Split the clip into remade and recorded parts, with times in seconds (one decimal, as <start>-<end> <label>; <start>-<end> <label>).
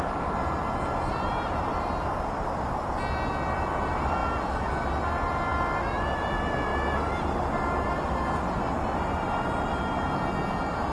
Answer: 0.0-10.9 recorded